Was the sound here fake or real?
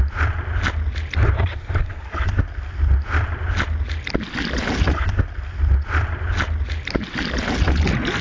real